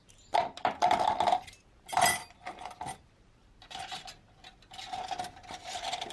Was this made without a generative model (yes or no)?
yes